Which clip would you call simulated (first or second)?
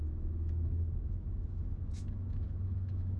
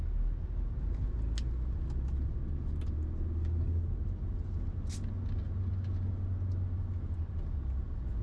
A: first